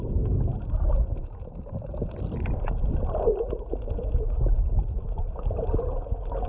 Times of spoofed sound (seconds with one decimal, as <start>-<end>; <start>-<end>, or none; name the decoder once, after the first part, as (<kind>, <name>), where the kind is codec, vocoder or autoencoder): none